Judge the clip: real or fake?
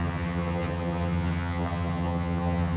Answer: fake